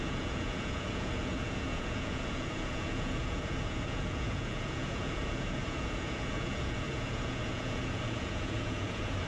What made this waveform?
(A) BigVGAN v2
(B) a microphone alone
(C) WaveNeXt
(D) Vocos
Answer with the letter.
D